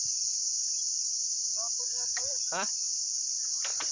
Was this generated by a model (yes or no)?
no